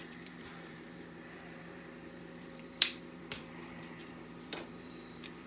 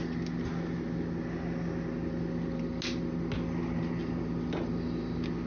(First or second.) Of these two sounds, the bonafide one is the second